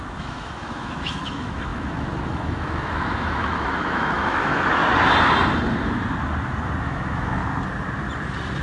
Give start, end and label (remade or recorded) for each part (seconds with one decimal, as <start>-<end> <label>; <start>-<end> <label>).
0.0-4.8 remade; 4.8-6.8 recorded; 6.8-7.4 remade; 7.4-8.6 recorded